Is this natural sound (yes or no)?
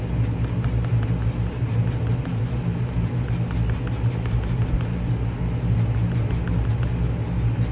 yes